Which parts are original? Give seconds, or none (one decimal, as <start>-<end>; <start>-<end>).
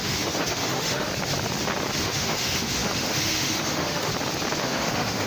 1.1-2.0; 4.1-4.6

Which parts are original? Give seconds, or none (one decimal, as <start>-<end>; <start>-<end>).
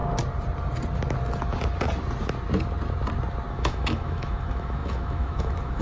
0.0-3.5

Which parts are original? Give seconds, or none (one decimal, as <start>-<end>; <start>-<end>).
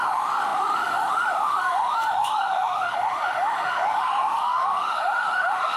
none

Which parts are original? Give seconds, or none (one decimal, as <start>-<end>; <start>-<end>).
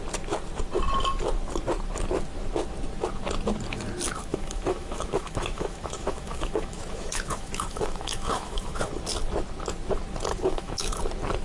0.0-4.3; 8.9-10.3; 11.0-11.4